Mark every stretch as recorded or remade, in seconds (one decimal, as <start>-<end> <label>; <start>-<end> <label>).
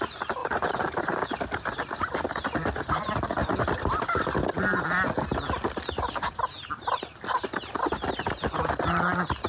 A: 0.0-0.4 recorded; 0.4-1.2 remade; 1.2-9.5 recorded